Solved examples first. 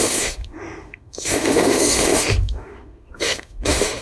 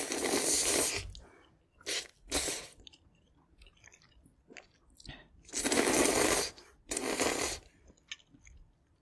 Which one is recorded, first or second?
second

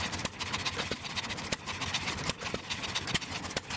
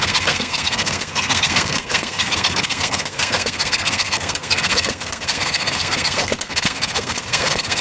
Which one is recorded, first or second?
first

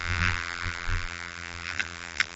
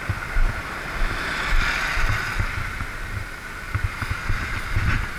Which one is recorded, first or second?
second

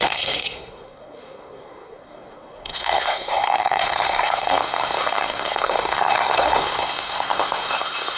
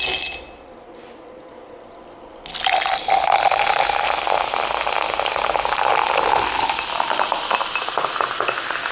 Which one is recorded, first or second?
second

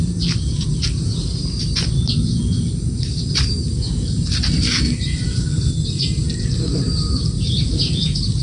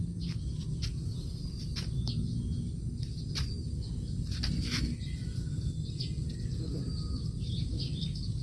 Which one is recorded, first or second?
second